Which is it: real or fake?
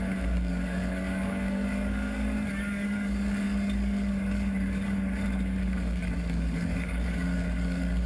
fake